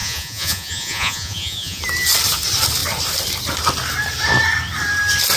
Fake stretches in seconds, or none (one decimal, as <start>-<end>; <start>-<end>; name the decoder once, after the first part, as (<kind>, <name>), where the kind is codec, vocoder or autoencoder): 0.0-1.8 (vocoder, Vocos)